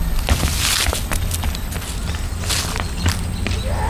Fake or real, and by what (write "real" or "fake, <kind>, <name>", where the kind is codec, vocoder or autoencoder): real